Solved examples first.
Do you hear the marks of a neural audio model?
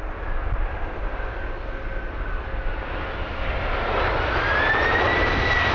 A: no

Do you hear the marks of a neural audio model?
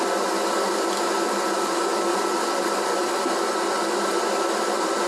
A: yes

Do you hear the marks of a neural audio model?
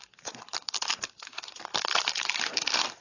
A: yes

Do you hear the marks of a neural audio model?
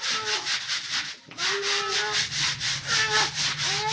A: no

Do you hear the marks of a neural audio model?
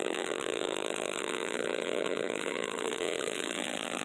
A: yes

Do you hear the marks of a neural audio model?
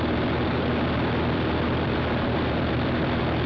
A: yes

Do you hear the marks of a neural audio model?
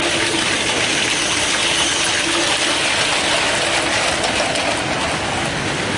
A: no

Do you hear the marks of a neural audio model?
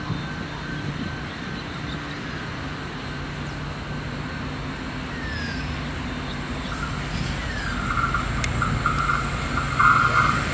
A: no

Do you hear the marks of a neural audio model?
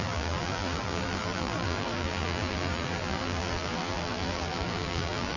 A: yes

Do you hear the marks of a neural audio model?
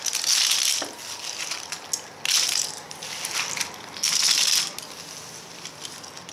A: no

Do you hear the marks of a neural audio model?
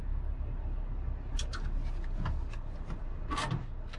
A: no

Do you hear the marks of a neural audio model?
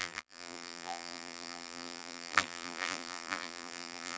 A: yes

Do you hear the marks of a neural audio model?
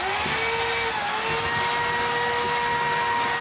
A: no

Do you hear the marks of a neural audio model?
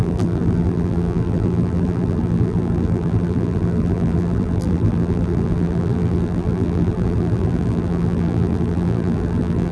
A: yes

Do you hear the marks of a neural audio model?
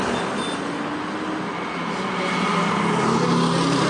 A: no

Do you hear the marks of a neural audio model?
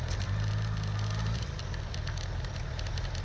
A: no